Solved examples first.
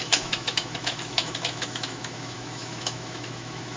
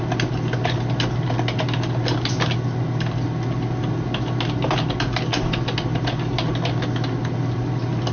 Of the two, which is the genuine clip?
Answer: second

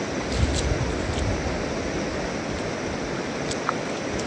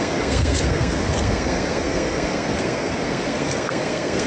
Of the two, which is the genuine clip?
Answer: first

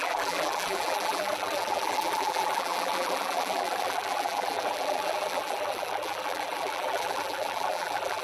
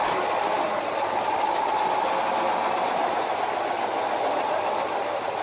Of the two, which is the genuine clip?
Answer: second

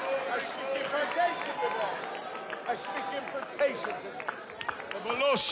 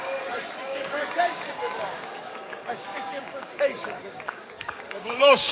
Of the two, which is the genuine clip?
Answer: first